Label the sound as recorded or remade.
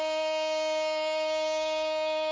remade